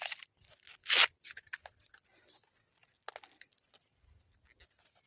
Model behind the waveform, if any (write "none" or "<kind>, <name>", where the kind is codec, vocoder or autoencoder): none